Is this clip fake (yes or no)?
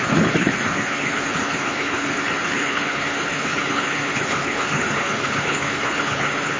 yes